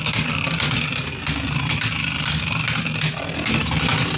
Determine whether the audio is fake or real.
real